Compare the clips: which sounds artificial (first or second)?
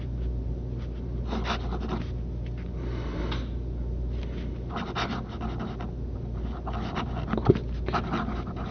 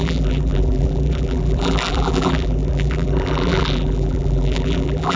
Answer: second